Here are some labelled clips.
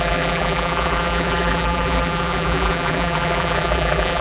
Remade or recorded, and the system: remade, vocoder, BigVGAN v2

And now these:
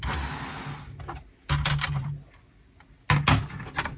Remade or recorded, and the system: recorded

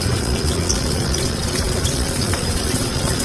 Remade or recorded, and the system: remade, vocoder, Vocos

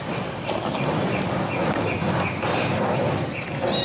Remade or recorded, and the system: recorded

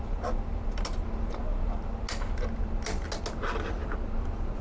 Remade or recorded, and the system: recorded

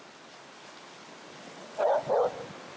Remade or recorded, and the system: recorded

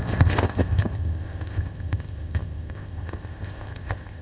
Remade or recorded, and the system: remade, codec, ZipCodec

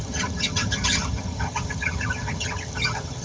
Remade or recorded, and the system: remade, vocoder, HiFi-GAN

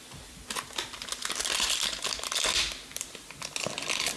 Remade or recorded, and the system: recorded